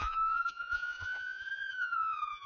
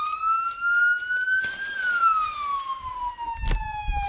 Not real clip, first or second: first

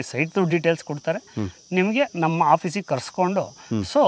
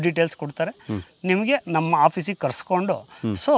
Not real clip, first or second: first